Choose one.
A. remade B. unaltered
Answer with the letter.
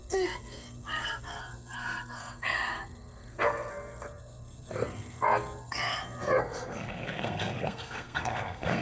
A